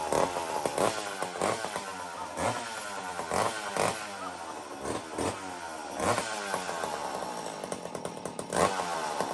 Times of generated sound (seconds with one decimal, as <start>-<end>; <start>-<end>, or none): none